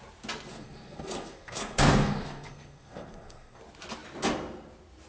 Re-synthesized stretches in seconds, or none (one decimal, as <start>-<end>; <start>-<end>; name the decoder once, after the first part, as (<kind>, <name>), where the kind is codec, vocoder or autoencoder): 0.5-3.6 (codec, SNAC)